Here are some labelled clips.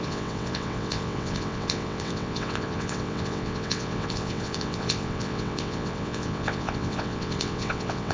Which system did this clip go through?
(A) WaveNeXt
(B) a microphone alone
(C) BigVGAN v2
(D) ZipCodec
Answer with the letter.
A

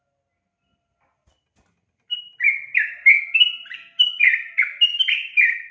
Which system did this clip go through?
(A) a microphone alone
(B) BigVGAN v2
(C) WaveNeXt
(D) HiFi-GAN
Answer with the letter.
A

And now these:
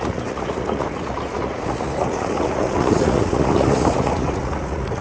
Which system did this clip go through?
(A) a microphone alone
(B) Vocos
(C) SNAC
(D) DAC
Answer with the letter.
B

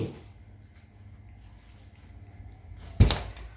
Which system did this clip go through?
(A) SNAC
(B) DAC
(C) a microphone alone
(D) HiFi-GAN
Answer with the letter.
C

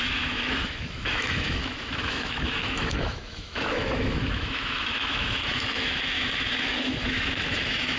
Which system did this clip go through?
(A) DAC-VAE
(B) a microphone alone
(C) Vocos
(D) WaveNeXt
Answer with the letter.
A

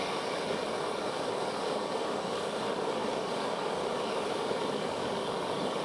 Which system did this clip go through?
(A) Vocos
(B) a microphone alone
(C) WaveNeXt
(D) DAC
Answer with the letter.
D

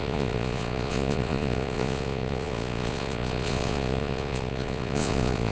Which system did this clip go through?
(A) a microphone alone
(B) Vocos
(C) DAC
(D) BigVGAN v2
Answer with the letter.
B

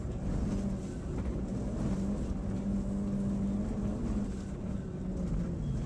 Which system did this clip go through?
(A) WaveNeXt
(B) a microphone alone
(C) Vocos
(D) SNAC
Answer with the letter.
B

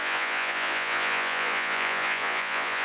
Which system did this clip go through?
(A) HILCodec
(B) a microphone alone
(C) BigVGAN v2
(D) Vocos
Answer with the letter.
D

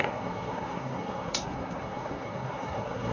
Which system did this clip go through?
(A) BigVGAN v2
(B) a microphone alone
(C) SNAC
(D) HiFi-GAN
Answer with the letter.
C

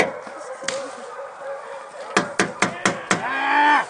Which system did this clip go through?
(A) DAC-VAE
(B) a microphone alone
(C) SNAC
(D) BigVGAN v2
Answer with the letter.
B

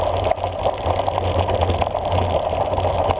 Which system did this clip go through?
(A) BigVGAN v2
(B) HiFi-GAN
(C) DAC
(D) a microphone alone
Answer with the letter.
D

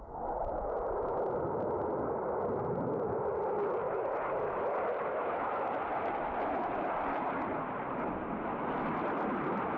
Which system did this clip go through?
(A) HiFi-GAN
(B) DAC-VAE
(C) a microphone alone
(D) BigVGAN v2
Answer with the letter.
C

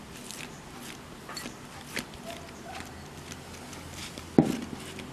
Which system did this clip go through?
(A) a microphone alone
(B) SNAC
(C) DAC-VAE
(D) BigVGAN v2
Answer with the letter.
A